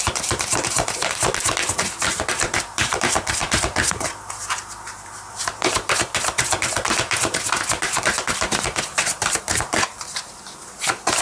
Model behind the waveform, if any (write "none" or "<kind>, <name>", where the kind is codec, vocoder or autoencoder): vocoder, BigVGAN v2